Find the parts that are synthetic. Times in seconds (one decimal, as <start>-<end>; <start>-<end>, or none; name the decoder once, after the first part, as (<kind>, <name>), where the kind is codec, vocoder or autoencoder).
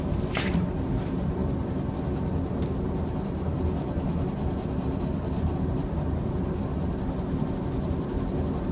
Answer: none